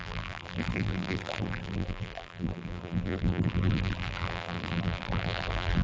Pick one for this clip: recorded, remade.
remade